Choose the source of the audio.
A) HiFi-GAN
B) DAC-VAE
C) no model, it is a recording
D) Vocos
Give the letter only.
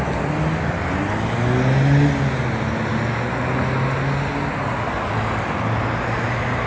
C